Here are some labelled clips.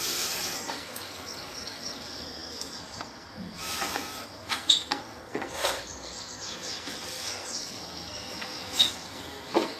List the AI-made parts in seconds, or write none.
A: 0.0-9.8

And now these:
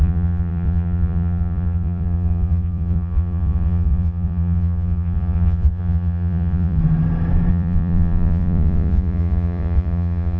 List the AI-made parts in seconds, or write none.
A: 0.0-6.8; 7.5-10.4

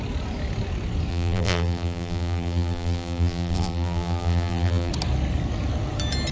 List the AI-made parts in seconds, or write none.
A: 1.1-4.9

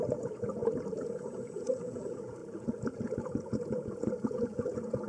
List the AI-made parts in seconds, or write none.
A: 0.0-5.1

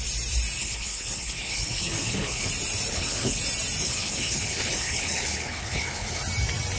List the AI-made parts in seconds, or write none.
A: 0.6-2.5; 2.9-3.4; 3.8-6.2

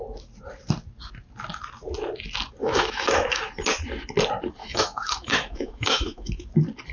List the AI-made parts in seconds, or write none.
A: 2.6-3.4; 4.6-6.5

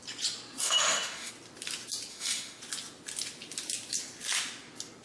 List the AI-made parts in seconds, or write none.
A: 0.6-1.3; 2.1-2.6